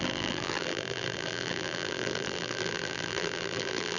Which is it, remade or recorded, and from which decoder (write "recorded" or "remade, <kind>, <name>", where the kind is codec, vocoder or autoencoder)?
remade, vocoder, BigVGAN v2